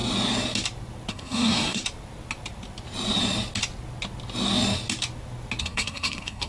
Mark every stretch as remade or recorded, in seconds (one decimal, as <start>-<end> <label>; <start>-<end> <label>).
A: 0.0-1.1 recorded; 1.1-1.8 remade; 1.8-5.6 recorded; 5.6-6.5 remade